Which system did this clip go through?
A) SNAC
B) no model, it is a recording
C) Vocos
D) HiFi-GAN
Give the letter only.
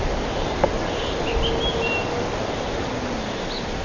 B